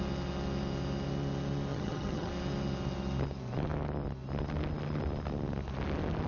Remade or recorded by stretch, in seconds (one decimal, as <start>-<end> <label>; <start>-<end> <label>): 0.0-1.7 recorded; 1.7-2.3 remade; 2.3-6.3 recorded